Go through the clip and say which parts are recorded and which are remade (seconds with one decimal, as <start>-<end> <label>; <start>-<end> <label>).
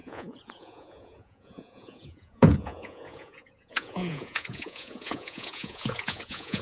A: 0.0-6.6 remade